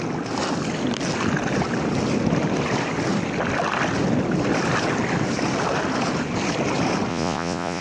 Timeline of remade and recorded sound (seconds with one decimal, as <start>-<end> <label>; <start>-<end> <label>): 0.0-7.1 recorded; 7.1-7.8 remade